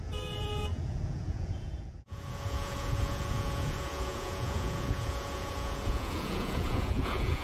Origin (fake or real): fake